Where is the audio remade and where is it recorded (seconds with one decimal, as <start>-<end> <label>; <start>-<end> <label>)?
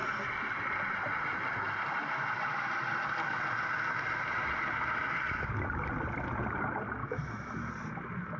0.0-7.0 recorded; 7.0-7.7 remade; 7.7-8.4 recorded